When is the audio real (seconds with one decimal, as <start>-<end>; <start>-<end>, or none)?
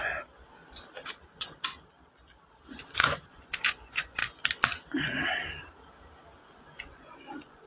0.6-1.1; 1.7-2.8; 4.2-6.4